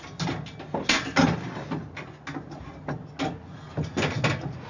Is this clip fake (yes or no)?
no